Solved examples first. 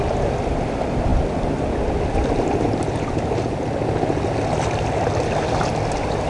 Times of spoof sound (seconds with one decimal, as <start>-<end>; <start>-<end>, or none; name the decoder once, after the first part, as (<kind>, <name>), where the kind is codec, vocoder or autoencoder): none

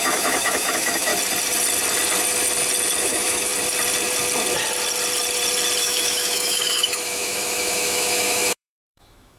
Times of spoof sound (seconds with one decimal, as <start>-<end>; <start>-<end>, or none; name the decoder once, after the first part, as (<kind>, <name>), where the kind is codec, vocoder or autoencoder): 0.0-1.1 (autoencoder, DAC-VAE); 3.0-3.5; 5.8-9.4

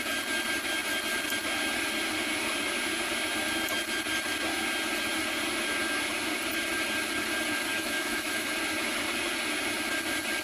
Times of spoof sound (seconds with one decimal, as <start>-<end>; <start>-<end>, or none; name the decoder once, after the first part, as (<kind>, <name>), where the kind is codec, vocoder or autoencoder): 7.7-8.5 (autoencoder, DAC-VAE)